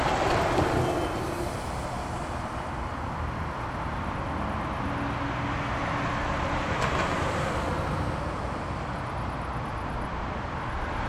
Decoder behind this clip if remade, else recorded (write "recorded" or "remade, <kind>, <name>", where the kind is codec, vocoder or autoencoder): recorded